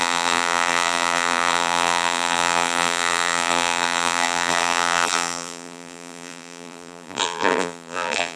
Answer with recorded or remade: remade